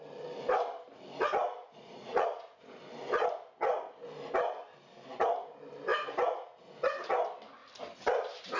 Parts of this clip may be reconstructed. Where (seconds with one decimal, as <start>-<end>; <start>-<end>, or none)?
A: 1.6-2.8